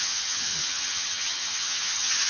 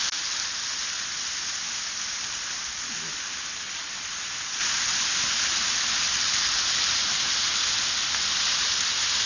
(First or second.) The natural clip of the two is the second